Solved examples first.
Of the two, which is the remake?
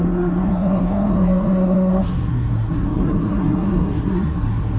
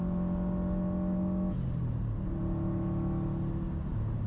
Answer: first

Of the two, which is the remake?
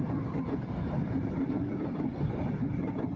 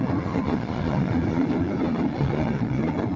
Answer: second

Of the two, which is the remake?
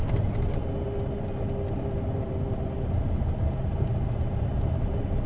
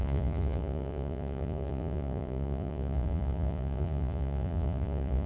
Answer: second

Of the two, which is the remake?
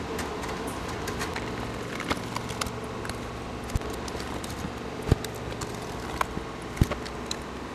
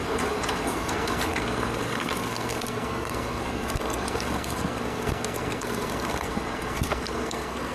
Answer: second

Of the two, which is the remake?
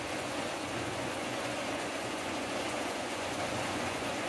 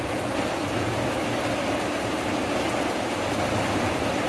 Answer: first